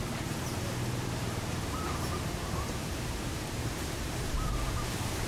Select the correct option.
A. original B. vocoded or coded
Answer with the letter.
B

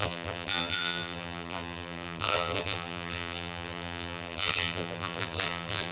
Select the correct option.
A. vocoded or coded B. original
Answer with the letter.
A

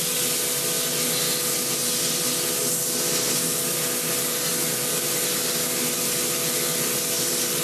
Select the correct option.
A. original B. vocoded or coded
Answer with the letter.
A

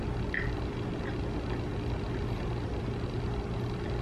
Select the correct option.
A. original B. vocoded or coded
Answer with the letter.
A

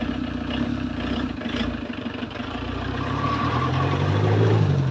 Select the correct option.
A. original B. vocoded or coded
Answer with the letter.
B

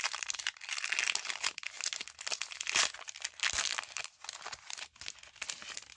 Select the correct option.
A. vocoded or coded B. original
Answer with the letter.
B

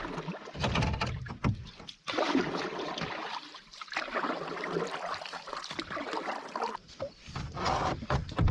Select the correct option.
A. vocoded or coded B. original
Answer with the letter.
A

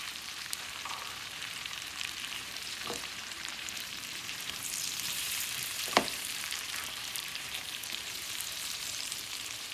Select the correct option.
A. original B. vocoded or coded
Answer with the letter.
B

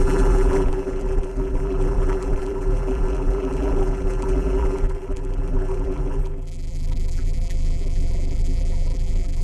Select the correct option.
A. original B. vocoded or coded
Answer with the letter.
B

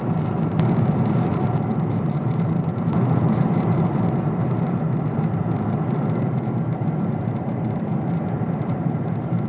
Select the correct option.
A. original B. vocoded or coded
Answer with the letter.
B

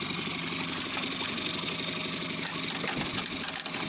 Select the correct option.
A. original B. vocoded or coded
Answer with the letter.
A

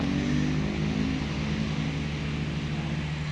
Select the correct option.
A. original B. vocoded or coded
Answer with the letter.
A